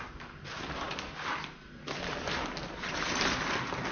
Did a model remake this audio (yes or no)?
no